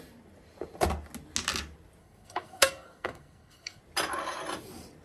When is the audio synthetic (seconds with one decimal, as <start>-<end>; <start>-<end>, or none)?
2.0-3.8